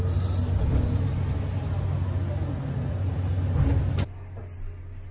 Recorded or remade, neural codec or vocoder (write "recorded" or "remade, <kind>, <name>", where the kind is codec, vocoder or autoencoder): recorded